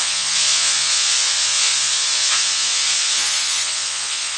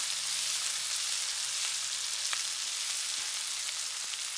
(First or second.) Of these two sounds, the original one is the second